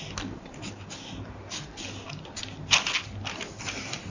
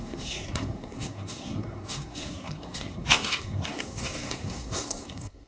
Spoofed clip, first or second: second